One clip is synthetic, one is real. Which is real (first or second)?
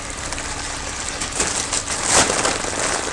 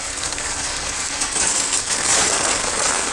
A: first